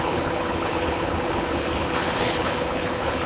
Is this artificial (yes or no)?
yes